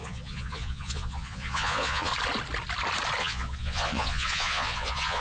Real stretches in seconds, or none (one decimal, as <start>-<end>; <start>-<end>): 2.1-3.2